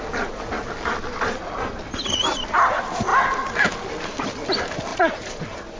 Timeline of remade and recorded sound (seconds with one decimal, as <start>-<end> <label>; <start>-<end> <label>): 0.0-5.8 recorded